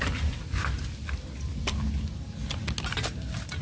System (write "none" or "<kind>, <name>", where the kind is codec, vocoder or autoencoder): none